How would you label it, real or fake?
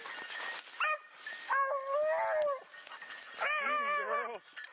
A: real